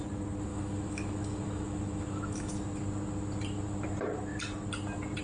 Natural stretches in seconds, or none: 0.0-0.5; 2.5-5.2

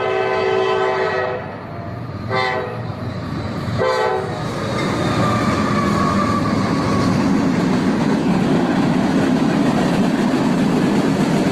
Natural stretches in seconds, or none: 0.0-2.9; 4.1-11.5

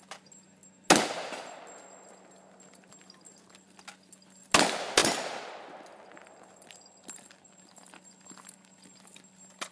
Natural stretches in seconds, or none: 0.0-9.7

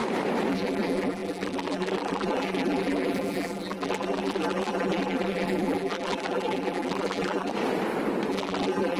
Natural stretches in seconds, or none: 0.0-0.5; 7.5-8.3